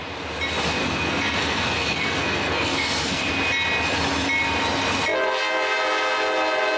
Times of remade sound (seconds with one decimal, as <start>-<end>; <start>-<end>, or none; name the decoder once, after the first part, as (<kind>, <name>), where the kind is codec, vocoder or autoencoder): 0.8-3.3 (codec, SNAC)